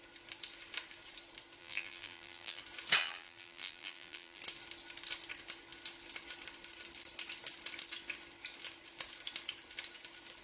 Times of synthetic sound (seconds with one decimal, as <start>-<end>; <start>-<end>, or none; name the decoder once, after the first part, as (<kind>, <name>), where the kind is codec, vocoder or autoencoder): 1.6-2.6 (vocoder, BigVGAN v2); 3.0-4.4